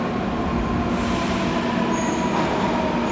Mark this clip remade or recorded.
recorded